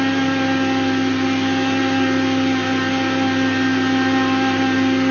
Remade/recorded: recorded